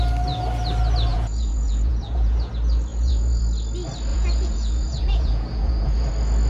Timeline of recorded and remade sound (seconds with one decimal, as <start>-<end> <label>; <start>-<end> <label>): 0.0-1.1 recorded; 1.1-2.5 remade; 2.5-2.9 recorded; 2.9-3.4 remade; 3.4-4.1 recorded; 4.1-6.1 remade; 6.1-6.5 recorded